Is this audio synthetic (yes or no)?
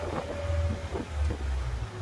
no